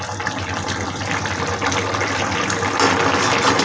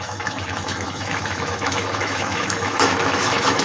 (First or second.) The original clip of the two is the first